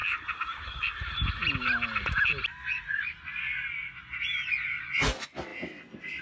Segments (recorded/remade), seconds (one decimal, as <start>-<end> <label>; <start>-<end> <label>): 0.0-2.3 remade; 2.3-6.2 recorded